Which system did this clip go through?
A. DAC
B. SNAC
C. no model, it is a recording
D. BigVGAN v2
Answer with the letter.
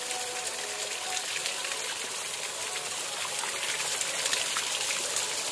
C